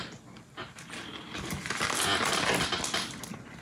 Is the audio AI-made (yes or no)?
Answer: no